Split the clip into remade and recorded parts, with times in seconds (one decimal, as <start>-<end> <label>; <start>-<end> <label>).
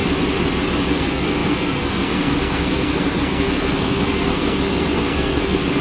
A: 0.0-0.9 recorded; 0.9-5.8 remade